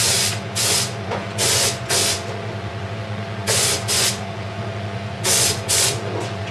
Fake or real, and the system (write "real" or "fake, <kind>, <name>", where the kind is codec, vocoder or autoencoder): fake, vocoder, Vocos